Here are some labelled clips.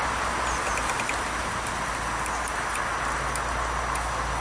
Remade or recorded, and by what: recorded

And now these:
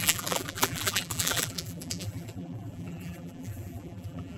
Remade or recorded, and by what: remade, vocoder, BigVGAN v2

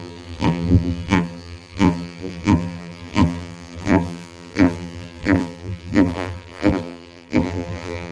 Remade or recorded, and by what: remade, vocoder, BigVGAN v2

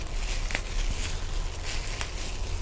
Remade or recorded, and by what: recorded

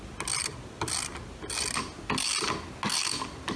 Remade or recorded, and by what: recorded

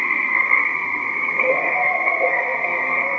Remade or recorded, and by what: remade, codec, SNAC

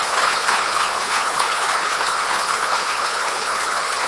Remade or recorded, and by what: remade, codec, HILCodec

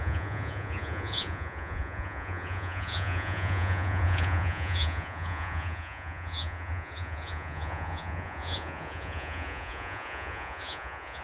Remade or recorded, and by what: remade, vocoder, Vocos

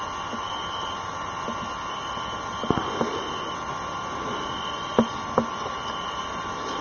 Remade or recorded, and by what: recorded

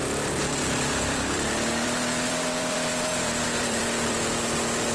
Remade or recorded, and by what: remade, vocoder, BigVGAN v2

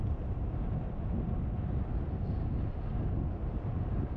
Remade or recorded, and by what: recorded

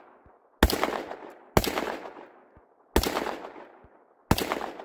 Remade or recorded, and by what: recorded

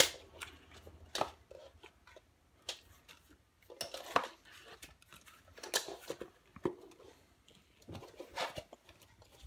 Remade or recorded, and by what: recorded